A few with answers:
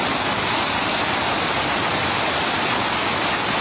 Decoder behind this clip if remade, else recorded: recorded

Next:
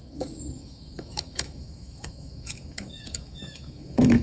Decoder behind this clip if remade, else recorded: remade, autoencoder, DAC-VAE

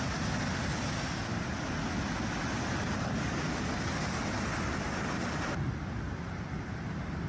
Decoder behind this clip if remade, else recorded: recorded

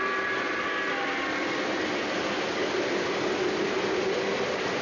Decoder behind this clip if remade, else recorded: recorded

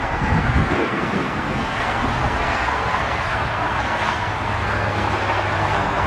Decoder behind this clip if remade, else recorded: remade, codec, SNAC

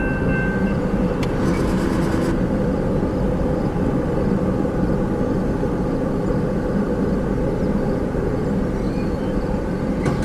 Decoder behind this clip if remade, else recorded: recorded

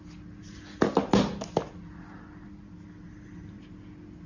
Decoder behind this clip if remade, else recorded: recorded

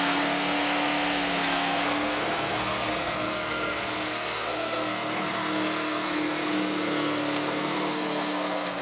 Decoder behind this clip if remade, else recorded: remade, codec, SNAC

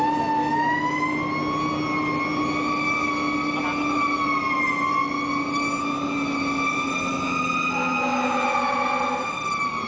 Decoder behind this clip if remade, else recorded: recorded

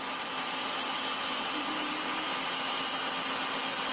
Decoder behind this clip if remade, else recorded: recorded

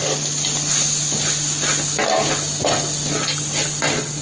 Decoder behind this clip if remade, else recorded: recorded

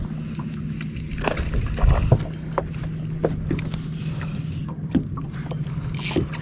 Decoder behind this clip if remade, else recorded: recorded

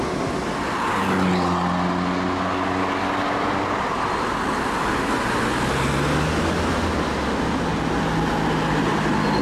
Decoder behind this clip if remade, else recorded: recorded